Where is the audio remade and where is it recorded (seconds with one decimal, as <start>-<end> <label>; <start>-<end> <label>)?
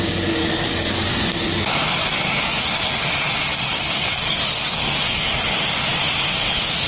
0.0-0.4 recorded; 0.4-1.1 remade; 1.1-2.0 recorded; 2.0-2.8 remade; 2.8-3.5 recorded; 3.5-5.4 remade; 5.4-6.9 recorded